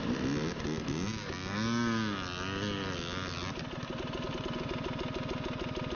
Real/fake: real